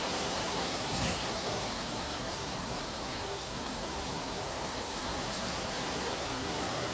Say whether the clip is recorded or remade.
remade